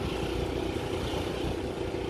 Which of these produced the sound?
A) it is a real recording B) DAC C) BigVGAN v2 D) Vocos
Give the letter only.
A